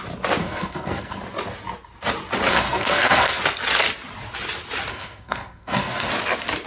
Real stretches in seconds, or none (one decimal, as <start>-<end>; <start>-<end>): 0.0-0.4; 1.2-2.5; 3.4-4.9; 6.1-6.7